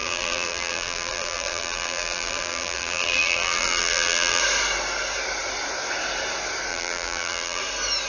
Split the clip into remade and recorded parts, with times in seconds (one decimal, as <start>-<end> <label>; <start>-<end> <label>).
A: 0.0-4.4 remade; 4.4-6.7 recorded; 6.7-7.6 remade; 7.6-8.1 recorded